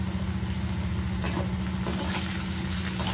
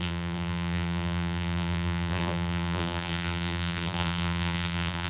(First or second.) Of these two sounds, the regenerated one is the second